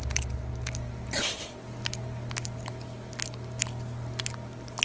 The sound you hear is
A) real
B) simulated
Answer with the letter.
A